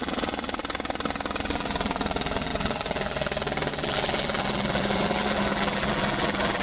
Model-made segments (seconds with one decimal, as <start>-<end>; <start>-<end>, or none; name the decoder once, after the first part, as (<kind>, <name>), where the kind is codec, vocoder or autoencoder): 0.0-0.6 (vocoder, BigVGAN v2); 1.4-6.6

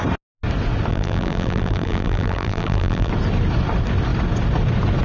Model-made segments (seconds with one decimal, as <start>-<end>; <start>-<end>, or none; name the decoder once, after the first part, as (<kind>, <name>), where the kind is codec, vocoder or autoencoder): 0.9-3.1 (vocoder, BigVGAN v2)